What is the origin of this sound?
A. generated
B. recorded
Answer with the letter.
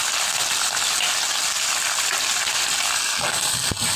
B